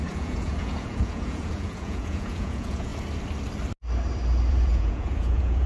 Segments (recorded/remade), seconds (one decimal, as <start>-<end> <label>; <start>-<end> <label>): 0.0-2.9 remade; 2.9-4.5 recorded; 4.5-5.7 remade